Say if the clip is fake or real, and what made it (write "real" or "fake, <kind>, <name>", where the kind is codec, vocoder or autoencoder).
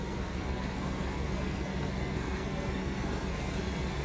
fake, codec, SNAC